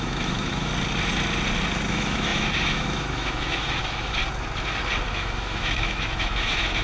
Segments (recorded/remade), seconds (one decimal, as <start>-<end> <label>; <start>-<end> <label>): 0.0-0.7 remade; 0.7-1.9 recorded; 1.9-4.2 remade; 4.2-5.1 recorded; 5.1-6.8 remade

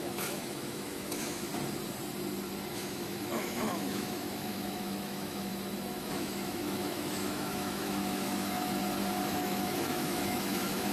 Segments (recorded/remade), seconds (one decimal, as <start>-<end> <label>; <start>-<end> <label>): 0.0-1.5 remade; 1.5-2.7 recorded; 2.7-5.5 remade; 5.5-6.0 recorded; 6.0-8.8 remade; 8.8-9.3 recorded; 9.3-10.9 remade

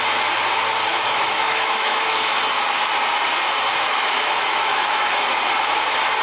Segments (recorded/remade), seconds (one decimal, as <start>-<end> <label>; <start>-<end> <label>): 0.0-0.9 recorded; 0.9-2.4 remade; 2.4-3.7 recorded; 3.7-5.0 remade; 5.0-6.2 recorded

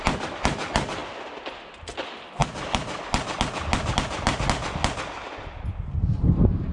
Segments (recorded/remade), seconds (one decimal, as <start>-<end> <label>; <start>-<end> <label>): 0.0-6.7 recorded

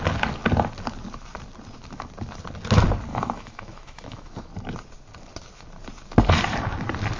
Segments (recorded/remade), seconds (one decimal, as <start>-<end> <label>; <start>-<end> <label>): 0.0-3.1 recorded; 3.1-4.5 remade; 4.5-7.2 recorded

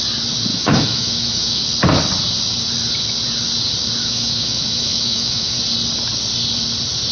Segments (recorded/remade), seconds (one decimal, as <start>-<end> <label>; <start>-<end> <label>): 0.0-0.5 recorded; 0.5-1.6 remade; 1.6-4.0 recorded; 4.0-5.6 remade; 5.6-7.1 recorded

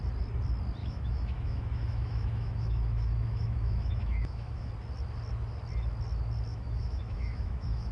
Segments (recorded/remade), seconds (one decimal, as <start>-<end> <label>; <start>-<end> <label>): 0.0-0.8 recorded; 0.8-4.7 remade; 4.7-6.5 recorded; 6.5-7.9 remade

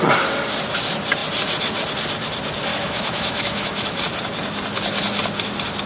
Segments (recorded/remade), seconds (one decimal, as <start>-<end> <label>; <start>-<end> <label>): 0.0-2.7 recorded; 2.7-4.0 remade; 4.0-5.8 recorded